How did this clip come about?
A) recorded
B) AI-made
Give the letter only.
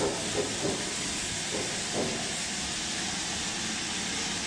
A